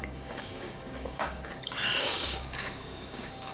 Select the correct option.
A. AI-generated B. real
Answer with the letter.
A